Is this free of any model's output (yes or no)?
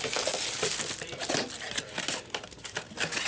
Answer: yes